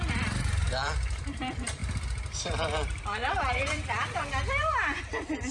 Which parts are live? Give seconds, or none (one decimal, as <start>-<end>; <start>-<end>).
1.8-2.4; 4.2-5.0

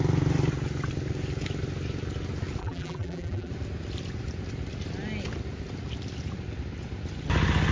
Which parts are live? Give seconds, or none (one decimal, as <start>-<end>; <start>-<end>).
0.0-2.6; 3.5-7.7

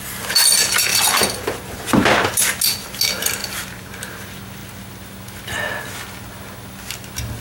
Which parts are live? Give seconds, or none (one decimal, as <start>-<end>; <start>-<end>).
0.0-0.9; 2.3-3.4; 4.1-7.4

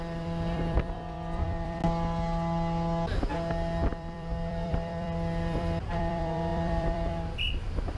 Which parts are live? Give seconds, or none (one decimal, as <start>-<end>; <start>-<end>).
1.8-3.9